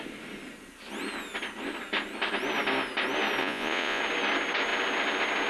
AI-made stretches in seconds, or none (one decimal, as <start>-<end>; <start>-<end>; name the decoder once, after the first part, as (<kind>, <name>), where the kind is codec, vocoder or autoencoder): 3.4-4.0 (vocoder, Vocos)